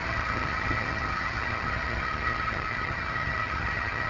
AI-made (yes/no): yes